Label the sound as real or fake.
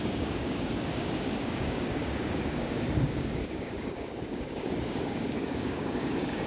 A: fake